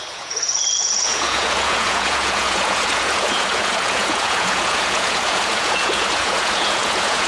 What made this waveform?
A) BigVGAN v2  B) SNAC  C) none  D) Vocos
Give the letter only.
D